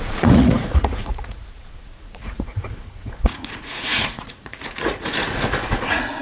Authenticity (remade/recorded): remade